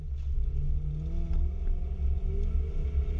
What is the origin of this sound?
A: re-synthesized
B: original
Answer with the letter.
B